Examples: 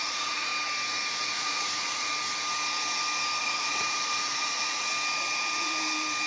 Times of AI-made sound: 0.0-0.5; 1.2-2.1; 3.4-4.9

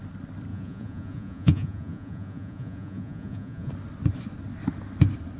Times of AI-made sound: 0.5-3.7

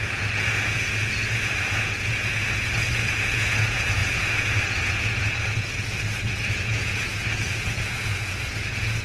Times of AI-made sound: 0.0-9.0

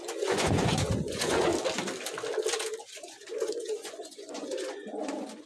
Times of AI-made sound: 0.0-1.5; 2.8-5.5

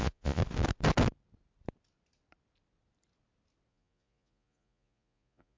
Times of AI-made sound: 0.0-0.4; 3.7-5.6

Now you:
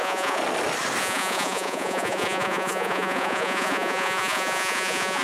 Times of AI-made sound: 0.0-0.4; 1.0-5.2

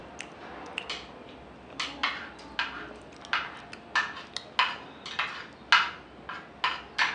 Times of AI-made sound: none